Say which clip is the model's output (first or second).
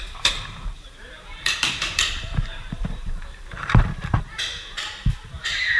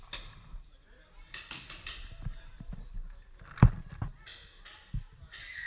first